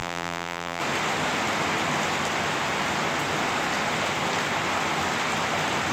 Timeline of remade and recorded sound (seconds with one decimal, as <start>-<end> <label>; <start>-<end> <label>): 0.0-0.8 remade; 0.8-5.9 recorded